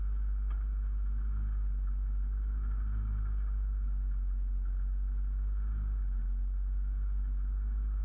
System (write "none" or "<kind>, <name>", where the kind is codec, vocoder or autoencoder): none